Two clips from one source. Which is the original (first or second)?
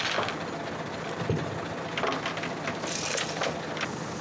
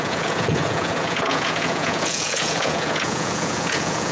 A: first